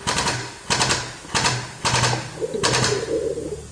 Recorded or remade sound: recorded